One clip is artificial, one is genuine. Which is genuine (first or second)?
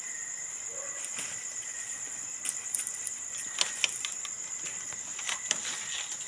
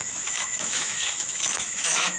first